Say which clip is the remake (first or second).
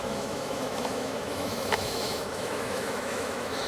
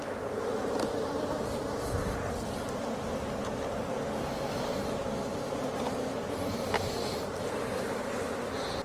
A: first